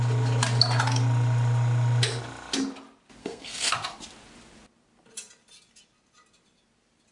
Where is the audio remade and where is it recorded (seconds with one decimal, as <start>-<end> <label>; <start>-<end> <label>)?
0.0-3.2 recorded; 3.2-3.7 remade; 3.7-7.1 recorded